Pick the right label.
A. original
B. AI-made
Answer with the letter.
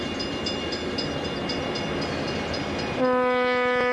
A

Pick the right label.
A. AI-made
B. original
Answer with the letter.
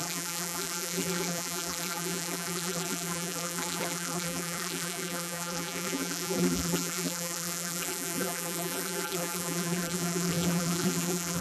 A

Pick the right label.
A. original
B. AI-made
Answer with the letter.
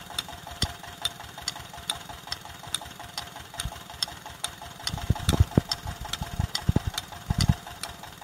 B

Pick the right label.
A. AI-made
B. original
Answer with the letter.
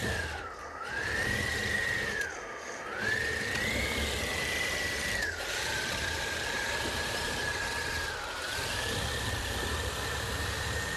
A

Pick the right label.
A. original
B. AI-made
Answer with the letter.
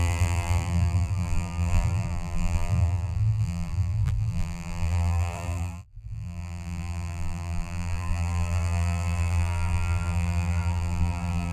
B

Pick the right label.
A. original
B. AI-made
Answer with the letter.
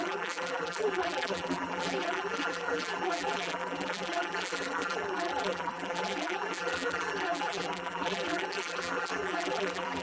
B